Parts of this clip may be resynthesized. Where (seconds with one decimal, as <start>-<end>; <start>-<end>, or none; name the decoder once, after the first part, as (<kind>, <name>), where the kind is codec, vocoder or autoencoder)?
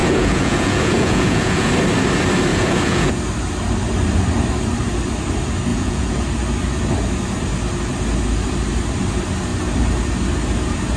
0.0-1.7 (vocoder, Vocos); 2.5-3.2; 5.7-6.2